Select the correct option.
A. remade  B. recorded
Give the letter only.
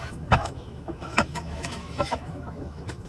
A